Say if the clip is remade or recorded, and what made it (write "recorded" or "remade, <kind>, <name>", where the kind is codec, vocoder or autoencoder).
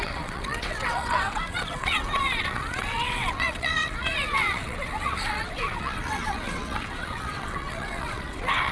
remade, vocoder, WaveNeXt